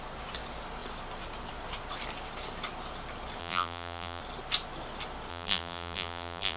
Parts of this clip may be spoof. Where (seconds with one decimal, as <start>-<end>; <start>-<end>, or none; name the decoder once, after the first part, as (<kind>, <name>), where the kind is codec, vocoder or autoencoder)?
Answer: 3.4-4.2 (vocoder, BigVGAN v2); 5.3-6.6